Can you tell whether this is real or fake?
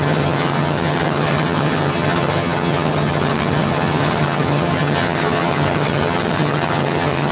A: fake